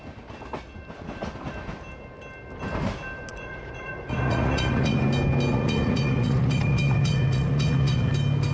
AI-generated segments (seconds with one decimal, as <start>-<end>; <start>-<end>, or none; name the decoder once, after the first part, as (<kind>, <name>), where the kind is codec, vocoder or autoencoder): 3.3-5.1 (vocoder, Vocos); 5.5-8.1